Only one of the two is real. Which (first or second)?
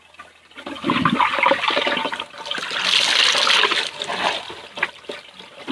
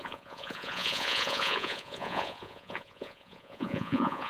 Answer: first